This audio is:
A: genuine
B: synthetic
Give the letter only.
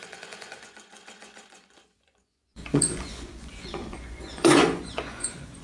B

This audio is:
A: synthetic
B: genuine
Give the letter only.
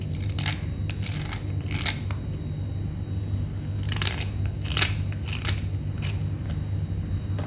B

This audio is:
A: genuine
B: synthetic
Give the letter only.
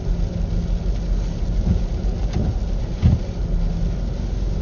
A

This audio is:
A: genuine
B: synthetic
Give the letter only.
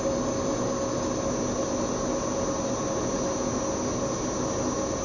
A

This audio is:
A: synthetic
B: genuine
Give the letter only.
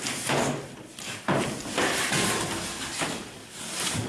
B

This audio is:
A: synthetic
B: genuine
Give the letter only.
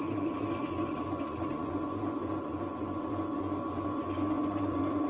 A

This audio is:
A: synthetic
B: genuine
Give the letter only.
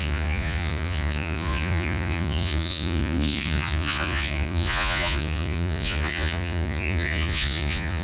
A